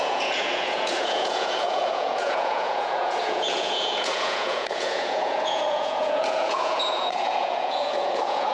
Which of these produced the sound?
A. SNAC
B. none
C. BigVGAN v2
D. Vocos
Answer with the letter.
D